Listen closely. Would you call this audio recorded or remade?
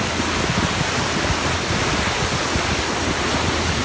recorded